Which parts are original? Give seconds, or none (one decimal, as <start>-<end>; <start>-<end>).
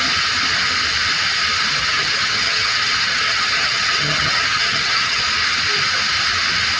0.0-1.8; 5.2-6.8